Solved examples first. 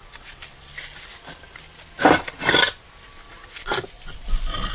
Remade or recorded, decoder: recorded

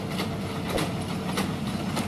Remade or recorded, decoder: recorded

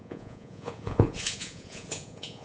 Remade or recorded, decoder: remade, vocoder, Vocos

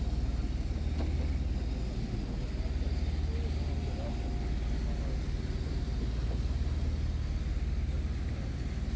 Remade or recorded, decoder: recorded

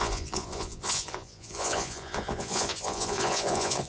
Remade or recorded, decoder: remade, vocoder, Vocos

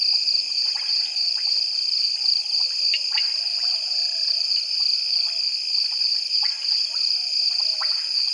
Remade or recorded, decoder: recorded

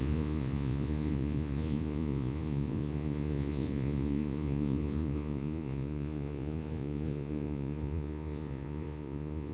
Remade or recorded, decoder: remade, vocoder, Vocos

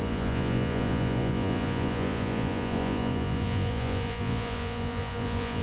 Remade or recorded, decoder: remade, vocoder, Vocos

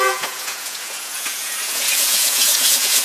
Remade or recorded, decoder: remade, vocoder, Vocos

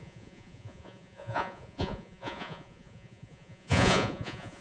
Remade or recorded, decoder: remade, vocoder, Vocos